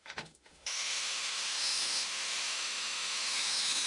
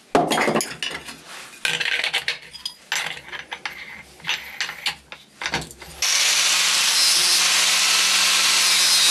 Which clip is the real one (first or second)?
second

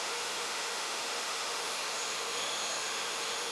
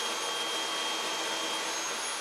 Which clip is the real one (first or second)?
second